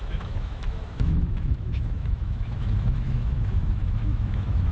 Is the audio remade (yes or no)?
yes